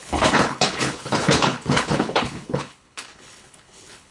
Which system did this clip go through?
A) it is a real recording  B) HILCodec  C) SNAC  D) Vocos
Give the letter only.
B